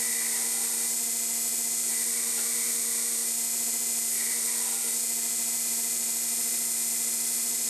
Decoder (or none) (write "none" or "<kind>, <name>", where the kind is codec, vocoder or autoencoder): none